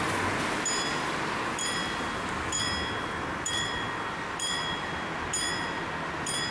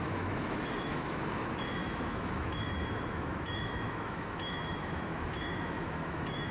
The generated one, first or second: second